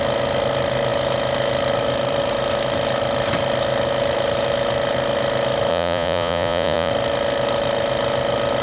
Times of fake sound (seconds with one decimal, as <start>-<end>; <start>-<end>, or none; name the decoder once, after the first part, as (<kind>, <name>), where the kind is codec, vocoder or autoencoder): 5.7-6.9 (vocoder, Vocos)